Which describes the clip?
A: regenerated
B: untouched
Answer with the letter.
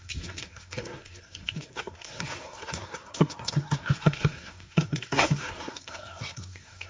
A